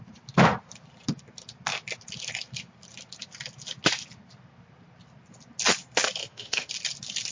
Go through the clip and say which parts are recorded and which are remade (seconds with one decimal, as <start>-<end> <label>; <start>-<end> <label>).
0.0-6.2 recorded; 6.2-6.7 remade; 6.7-7.3 recorded